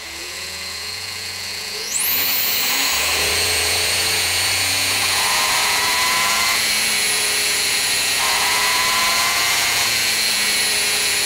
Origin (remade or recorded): remade